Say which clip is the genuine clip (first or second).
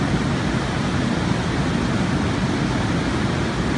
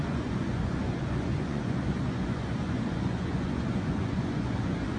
first